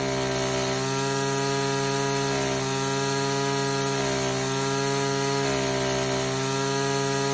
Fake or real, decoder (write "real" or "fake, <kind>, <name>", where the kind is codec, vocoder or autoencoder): real